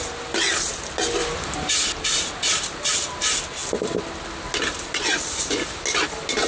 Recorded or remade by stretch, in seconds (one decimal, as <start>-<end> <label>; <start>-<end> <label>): 0.0-6.5 recorded

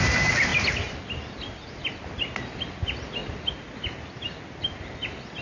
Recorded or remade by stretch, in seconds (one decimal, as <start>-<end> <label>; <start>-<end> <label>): 0.0-5.4 recorded

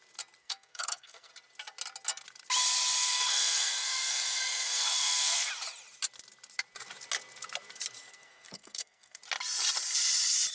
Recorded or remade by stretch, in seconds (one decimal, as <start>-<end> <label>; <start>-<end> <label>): 0.0-0.4 recorded; 0.4-1.3 remade; 1.3-3.0 recorded; 3.0-5.5 remade; 5.5-8.1 recorded; 8.1-9.2 remade; 9.2-10.5 recorded

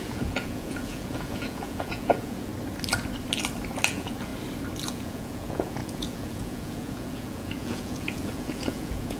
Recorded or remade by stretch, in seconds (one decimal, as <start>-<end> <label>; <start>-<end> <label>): 0.0-2.5 remade; 2.5-3.9 recorded; 3.9-4.3 remade; 4.3-4.9 recorded; 4.9-9.2 remade

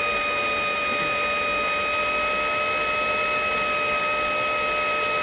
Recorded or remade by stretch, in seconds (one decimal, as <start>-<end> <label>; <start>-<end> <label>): 0.0-5.2 recorded

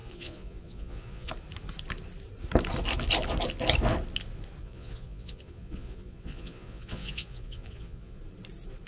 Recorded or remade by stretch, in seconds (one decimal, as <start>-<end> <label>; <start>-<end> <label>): 0.0-1.3 remade; 1.3-4.6 recorded; 4.6-8.2 remade; 8.2-8.9 recorded

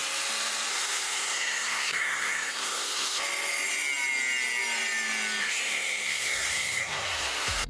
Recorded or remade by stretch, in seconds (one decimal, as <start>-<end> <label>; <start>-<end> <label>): 0.0-0.7 recorded; 0.7-3.2 remade; 3.2-5.4 recorded; 5.4-7.7 remade